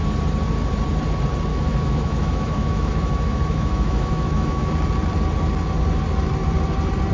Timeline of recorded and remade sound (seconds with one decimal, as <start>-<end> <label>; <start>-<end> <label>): 0.0-1.5 recorded; 1.5-4.7 remade; 4.7-7.1 recorded